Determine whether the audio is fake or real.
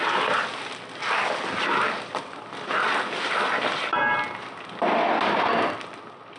real